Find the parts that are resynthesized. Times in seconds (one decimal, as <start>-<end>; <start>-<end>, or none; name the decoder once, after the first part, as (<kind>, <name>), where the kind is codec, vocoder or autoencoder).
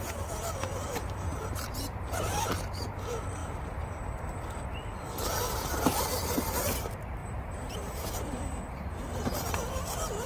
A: 1.3-2.9 (vocoder, BigVGAN v2); 3.4-4.4; 7.2-9.5